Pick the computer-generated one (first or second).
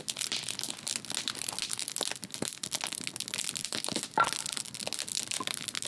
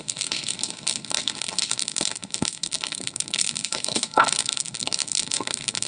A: second